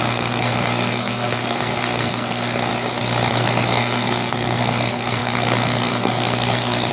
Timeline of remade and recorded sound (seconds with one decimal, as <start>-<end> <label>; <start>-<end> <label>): 0.0-2.7 remade; 2.7-3.3 recorded; 3.3-6.9 remade